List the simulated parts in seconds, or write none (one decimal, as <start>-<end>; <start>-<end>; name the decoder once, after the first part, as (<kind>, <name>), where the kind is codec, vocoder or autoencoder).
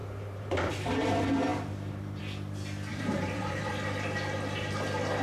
0.0-0.7 (vocoder, BigVGAN v2); 1.5-2.2; 2.9-3.7